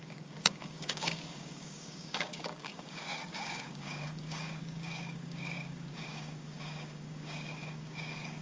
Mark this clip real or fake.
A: fake